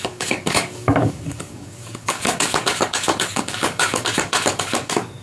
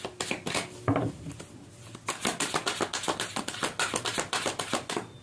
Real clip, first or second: second